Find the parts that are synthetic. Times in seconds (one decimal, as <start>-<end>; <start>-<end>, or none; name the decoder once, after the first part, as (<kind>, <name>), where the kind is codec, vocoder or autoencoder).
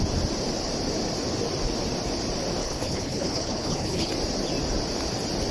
2.6-4.1 (codec, HILCodec)